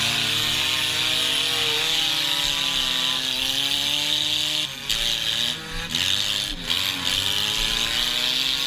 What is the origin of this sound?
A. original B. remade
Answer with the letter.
A